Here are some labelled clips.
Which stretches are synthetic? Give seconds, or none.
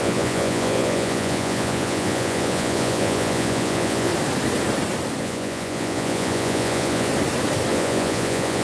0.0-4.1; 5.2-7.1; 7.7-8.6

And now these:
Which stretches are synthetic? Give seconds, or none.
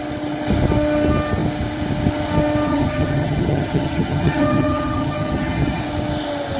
2.7-5.8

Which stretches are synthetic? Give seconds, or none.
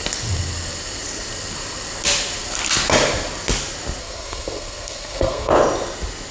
4.0-5.5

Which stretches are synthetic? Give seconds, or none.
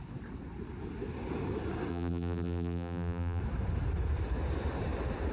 1.9-3.4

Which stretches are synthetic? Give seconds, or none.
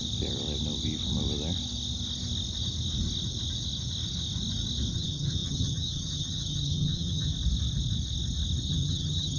4.9-7.3; 8.7-9.4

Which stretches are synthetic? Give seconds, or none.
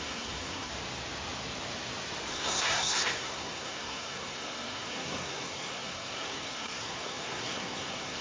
0.0-0.7; 2.3-8.2